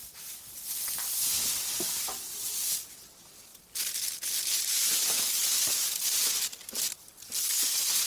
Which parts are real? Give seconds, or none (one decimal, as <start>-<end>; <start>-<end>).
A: 0.0-8.1